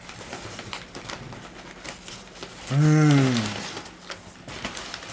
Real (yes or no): yes